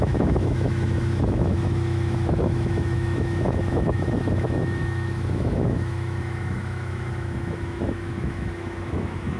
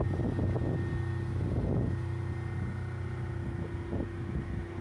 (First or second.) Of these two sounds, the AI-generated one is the first